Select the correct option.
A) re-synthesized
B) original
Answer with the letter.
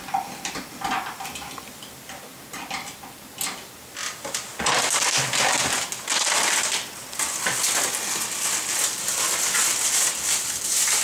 B